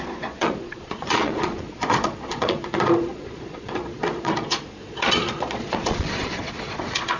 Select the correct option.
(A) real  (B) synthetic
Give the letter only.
B